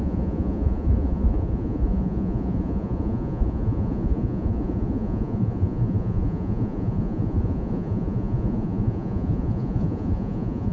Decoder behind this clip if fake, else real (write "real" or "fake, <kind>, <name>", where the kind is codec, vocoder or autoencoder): fake, vocoder, Vocos